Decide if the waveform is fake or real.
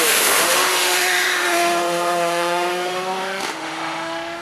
fake